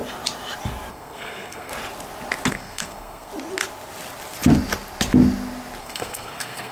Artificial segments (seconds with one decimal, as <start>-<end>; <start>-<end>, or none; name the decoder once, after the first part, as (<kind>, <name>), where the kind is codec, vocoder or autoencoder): 0.9-1.7 (codec, SNAC); 2.5-3.3; 5.8-6.7